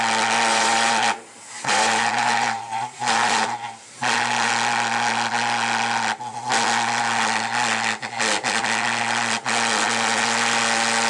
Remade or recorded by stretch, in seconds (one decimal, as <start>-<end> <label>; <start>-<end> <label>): 0.0-0.5 recorded; 0.5-4.5 remade; 4.5-11.1 recorded